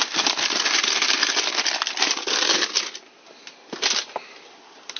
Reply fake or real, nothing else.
real